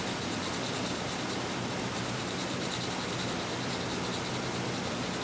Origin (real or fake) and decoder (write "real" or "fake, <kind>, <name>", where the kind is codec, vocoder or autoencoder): real